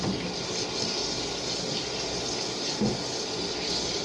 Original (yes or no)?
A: yes